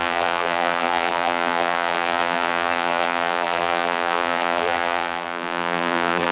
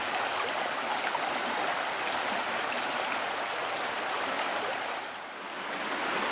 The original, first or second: second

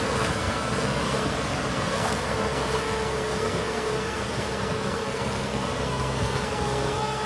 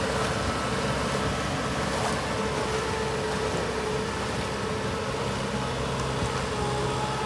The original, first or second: second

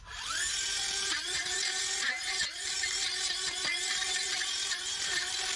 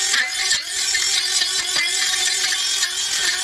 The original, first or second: second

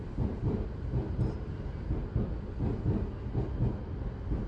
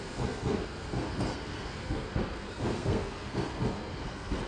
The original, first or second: first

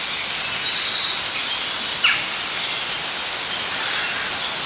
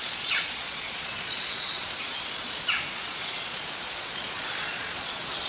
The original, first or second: first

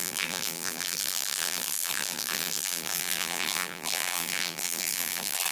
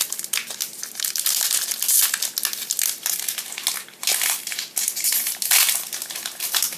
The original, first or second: second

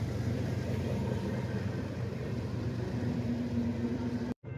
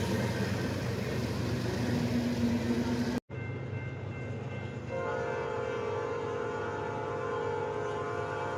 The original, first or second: second